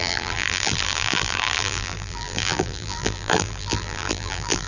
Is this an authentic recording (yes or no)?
no